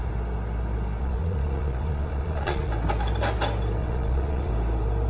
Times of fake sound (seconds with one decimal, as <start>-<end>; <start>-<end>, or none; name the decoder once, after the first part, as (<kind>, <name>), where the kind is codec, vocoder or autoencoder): 1.0-2.7 (vocoder, Vocos); 3.8-4.5